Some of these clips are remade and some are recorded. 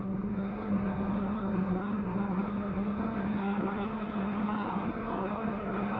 remade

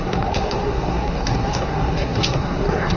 remade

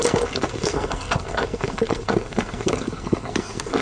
remade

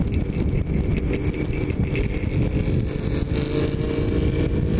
recorded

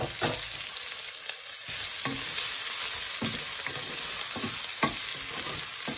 recorded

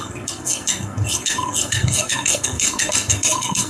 remade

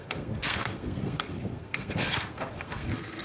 remade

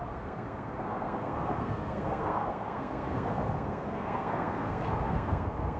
remade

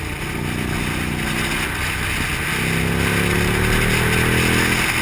recorded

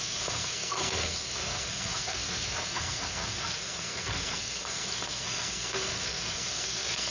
remade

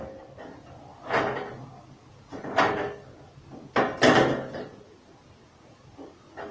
recorded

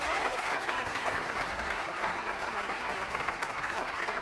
remade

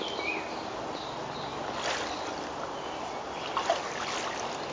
recorded